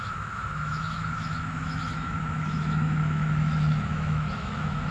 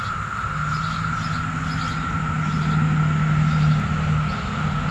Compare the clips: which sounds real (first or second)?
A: second